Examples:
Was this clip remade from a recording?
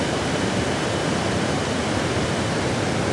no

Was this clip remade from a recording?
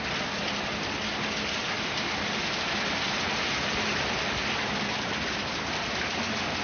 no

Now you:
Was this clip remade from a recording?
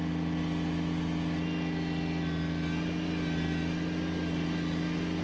no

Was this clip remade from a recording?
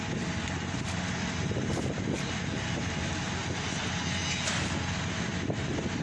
no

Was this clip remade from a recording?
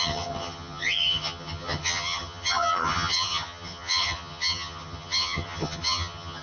yes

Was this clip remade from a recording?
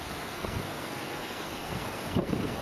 yes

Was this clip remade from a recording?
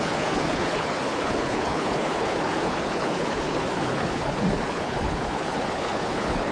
yes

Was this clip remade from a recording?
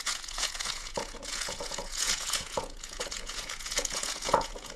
yes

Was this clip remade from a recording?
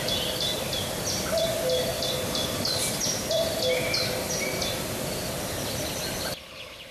no